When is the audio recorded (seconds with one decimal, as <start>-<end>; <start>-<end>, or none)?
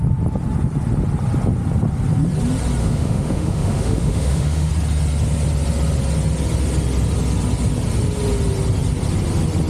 0.0-2.8; 4.7-9.7